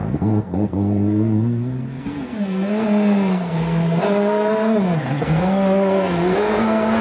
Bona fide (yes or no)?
no